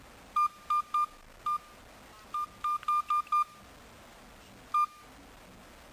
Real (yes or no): yes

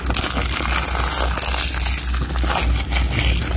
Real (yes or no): yes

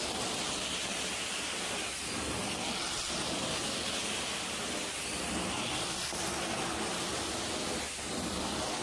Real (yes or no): yes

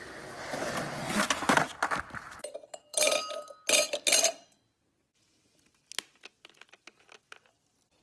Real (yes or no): yes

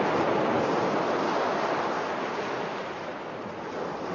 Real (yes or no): yes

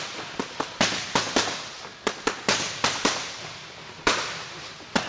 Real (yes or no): yes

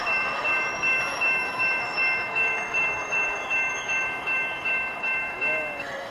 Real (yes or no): no